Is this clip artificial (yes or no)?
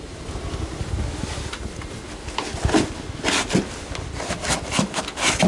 no